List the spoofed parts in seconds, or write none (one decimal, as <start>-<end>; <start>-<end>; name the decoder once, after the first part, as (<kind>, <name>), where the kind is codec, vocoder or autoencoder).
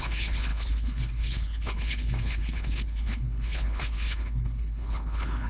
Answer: 0.0-5.5 (codec, HILCodec)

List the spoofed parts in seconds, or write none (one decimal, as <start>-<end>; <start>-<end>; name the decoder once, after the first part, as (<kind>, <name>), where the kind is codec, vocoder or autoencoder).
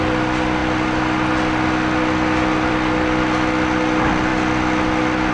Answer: none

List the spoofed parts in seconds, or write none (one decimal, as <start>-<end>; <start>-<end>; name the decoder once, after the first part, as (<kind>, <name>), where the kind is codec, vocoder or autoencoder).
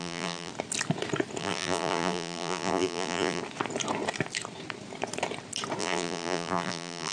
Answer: 0.0-0.5 (vocoder, BigVGAN v2); 1.4-3.4; 5.8-7.1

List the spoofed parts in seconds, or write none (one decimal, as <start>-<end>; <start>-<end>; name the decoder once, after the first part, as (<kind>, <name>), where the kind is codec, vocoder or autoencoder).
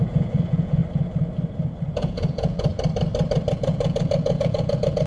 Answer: 0.0-0.8 (vocoder, Vocos); 1.9-2.7; 3.5-5.1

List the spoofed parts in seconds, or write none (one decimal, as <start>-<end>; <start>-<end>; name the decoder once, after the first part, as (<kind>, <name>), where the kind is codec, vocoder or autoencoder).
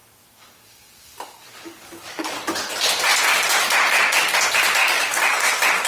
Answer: 0.0-2.7 (codec, DAC); 4.8-5.5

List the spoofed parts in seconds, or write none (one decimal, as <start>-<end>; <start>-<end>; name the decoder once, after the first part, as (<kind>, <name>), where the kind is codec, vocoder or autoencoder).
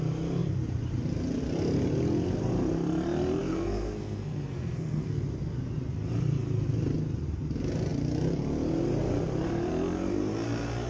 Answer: 3.4-5.2 (codec, SNAC)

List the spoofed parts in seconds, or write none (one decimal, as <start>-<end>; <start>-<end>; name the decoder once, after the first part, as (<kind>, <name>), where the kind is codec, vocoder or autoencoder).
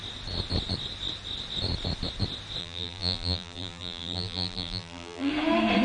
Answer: 2.6-5.3 (vocoder, BigVGAN v2)